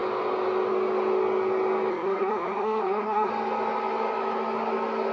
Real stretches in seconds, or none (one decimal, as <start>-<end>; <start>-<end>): 0.0-1.9; 3.3-5.1